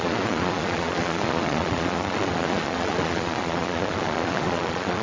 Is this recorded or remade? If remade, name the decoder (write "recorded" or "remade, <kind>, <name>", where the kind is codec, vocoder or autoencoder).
remade, vocoder, Vocos